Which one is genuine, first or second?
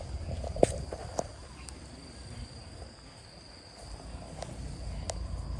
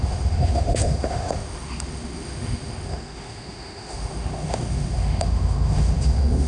first